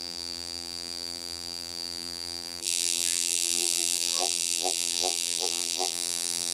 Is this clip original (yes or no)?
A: no